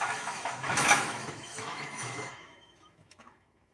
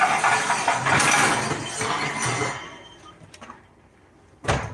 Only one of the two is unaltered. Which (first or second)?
second